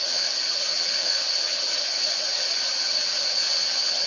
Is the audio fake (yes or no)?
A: yes